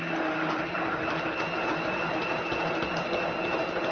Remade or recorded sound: recorded